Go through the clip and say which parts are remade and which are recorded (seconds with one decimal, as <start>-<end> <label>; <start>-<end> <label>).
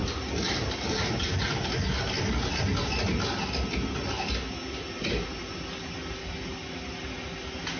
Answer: 0.0-7.8 recorded